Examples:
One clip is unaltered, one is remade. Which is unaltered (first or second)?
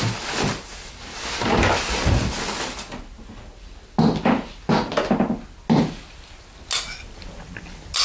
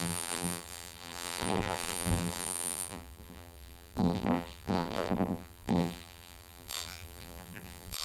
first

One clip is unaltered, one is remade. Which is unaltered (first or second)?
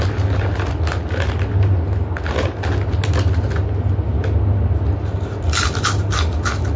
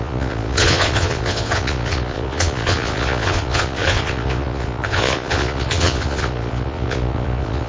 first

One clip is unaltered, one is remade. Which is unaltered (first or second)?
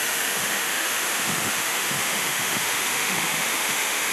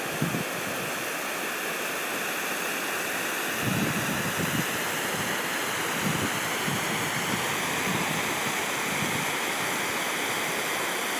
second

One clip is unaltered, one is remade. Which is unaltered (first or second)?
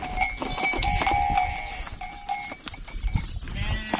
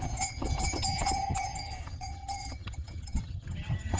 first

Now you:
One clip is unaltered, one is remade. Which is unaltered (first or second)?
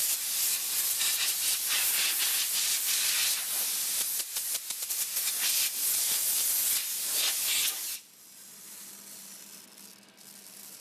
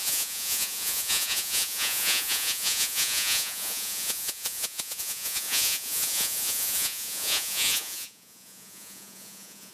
first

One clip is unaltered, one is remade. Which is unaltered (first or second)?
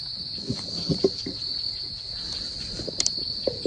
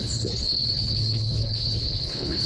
first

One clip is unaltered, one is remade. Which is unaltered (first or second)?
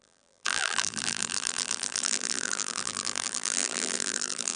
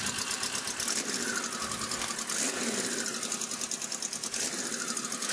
second